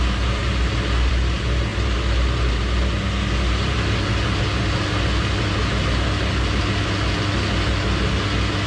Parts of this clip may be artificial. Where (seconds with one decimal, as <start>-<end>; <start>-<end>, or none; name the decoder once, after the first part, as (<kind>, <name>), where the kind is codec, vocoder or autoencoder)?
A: none